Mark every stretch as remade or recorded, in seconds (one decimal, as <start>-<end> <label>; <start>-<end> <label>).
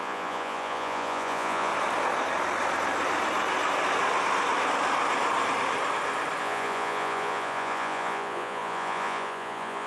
0.0-1.7 remade; 1.7-6.4 recorded; 6.4-9.9 remade